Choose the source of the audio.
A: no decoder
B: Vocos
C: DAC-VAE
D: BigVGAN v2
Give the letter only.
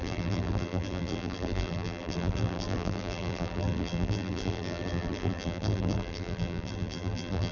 D